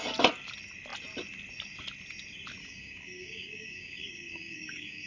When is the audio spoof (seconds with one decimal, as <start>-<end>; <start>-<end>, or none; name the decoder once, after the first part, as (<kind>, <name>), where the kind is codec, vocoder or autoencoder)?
2.6-5.1 (codec, DAC)